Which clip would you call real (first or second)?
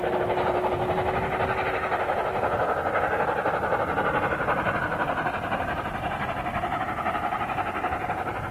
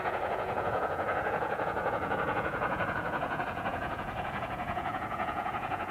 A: first